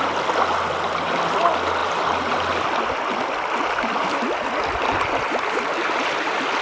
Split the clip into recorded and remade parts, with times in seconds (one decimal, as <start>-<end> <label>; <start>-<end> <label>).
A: 0.0-6.6 recorded